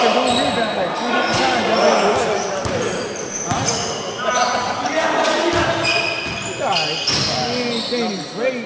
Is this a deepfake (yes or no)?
no